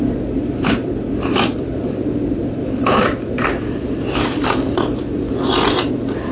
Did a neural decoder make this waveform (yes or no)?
yes